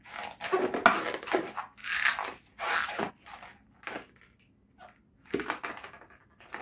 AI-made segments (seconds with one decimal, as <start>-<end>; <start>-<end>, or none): 1.8-3.1